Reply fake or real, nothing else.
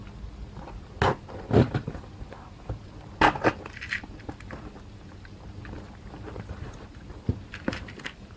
real